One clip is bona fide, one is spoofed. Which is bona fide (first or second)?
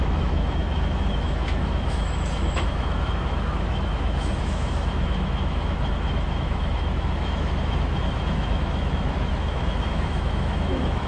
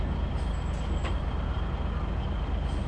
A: second